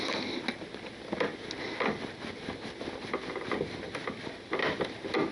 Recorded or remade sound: recorded